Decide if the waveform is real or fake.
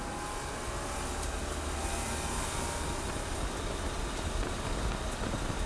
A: real